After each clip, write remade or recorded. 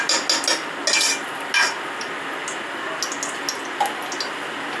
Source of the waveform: recorded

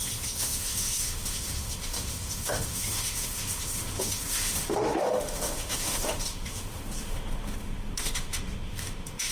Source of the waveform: remade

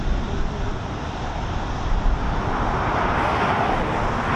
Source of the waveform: recorded